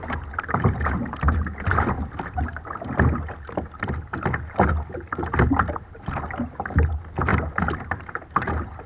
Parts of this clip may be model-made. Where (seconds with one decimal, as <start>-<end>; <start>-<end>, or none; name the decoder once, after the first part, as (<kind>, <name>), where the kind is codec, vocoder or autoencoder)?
none